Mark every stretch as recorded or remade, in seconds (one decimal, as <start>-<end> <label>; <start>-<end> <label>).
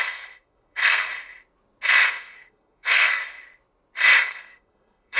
0.0-1.1 remade; 1.1-2.1 recorded; 2.1-3.2 remade; 3.2-4.2 recorded; 4.2-5.2 remade